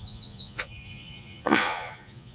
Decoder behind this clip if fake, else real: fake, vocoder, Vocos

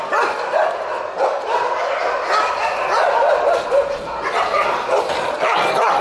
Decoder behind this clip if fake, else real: real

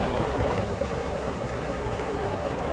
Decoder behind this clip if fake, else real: fake, codec, SNAC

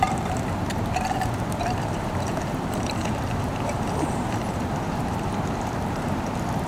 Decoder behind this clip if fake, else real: fake, vocoder, BigVGAN v2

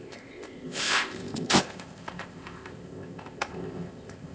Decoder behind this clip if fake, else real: fake, codec, ZipCodec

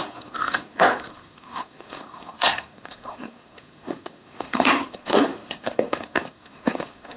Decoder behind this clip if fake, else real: fake, codec, SNAC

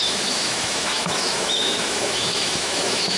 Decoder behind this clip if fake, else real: fake, autoencoder, DAC-VAE